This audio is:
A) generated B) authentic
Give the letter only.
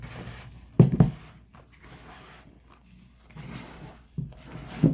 B